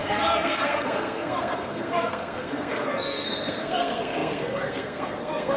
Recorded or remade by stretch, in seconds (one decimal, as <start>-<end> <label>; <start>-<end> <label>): 0.0-5.6 remade